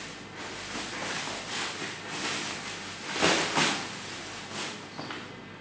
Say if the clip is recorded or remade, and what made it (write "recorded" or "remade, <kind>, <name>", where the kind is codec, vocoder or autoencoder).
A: recorded